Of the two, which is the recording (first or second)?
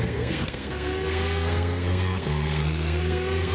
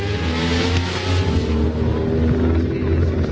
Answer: second